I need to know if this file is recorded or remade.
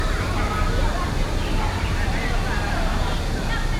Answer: recorded